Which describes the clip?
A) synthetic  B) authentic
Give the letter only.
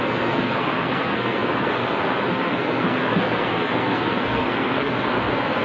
A